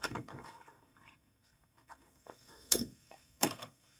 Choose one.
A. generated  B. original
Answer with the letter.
A